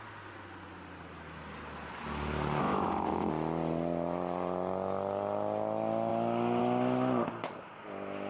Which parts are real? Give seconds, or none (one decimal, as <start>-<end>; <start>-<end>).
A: 0.0-2.6; 3.3-8.3

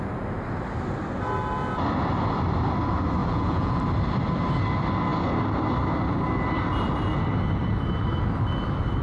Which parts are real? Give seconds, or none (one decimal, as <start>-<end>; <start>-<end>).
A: 0.0-3.2; 3.8-9.0